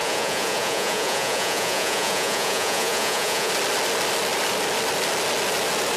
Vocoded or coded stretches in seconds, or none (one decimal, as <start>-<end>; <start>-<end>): 0.0-3.5